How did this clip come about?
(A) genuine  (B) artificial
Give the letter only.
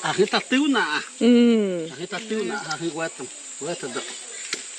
A